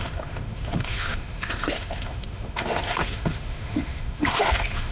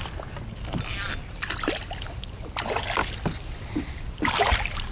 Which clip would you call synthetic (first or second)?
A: first